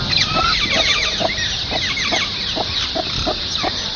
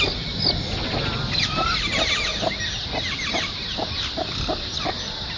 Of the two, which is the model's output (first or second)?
first